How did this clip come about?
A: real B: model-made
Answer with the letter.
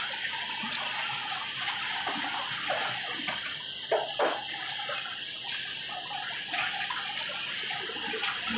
A